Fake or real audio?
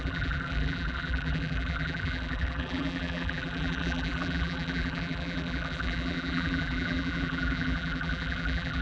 fake